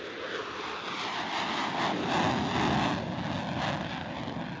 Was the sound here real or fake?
real